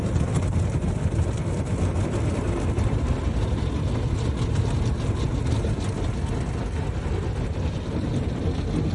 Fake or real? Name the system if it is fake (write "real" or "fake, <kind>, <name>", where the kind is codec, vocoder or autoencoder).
real